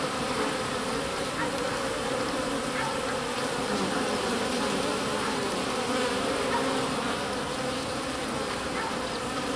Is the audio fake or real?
fake